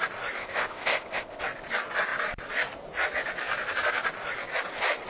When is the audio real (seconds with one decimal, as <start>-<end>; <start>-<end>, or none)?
0.0-0.4; 1.4-5.1